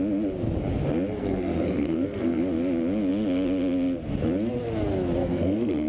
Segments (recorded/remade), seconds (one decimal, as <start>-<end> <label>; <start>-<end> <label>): 0.0-1.2 recorded; 1.2-2.4 remade; 2.4-5.2 recorded; 5.2-5.9 remade

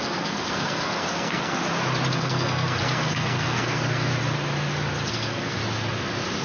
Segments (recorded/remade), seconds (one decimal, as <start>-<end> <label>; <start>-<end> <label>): 0.0-1.6 remade; 1.6-2.1 recorded; 2.1-4.1 remade; 4.1-5.1 recorded; 5.1-5.6 remade; 5.6-6.4 recorded

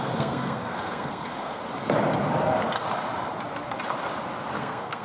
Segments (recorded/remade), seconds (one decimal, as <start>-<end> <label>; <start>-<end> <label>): 0.0-1.6 remade; 1.6-4.6 recorded; 4.6-5.0 remade

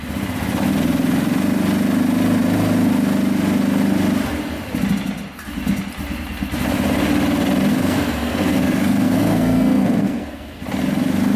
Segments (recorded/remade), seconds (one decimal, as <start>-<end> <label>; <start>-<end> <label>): 0.0-7.7 recorded; 7.7-10.6 remade; 10.6-11.4 recorded

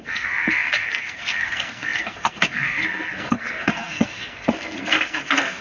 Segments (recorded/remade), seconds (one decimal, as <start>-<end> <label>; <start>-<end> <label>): 0.0-5.6 remade

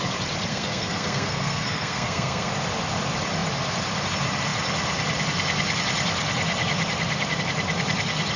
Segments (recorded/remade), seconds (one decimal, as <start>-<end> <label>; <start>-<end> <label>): 0.0-0.5 recorded; 0.5-2.5 remade; 2.5-8.4 recorded

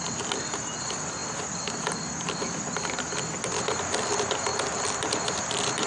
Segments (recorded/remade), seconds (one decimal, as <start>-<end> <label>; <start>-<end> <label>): 0.0-5.9 recorded

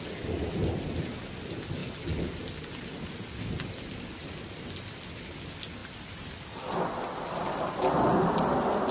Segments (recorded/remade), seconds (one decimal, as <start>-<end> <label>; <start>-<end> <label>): 0.0-8.9 recorded